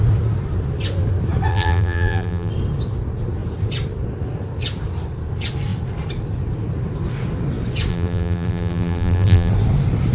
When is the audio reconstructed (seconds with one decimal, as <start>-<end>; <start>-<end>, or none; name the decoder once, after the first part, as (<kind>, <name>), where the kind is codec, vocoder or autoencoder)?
1.5-2.5 (vocoder, BigVGAN v2); 7.9-9.5